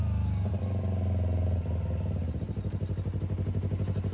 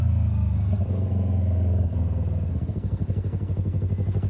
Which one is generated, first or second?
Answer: second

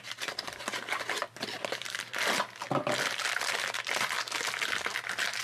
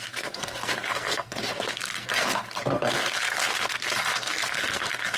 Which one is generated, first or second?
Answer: second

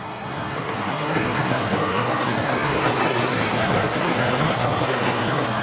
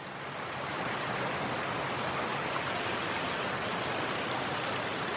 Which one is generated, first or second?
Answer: first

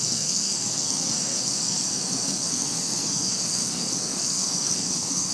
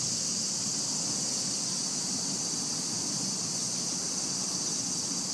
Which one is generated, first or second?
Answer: first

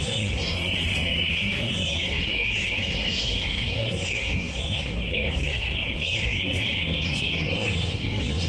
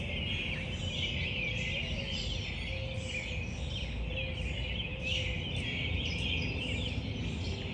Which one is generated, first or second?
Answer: first